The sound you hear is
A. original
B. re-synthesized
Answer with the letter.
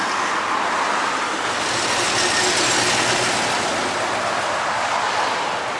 A